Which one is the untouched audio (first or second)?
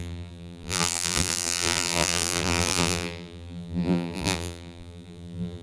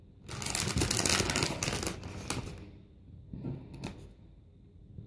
second